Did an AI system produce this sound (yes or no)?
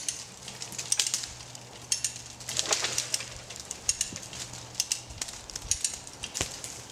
no